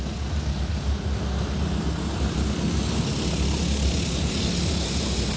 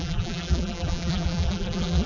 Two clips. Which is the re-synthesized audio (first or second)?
second